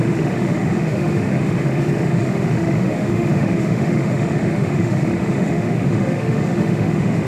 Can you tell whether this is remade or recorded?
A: remade